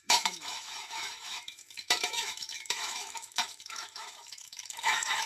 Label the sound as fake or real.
fake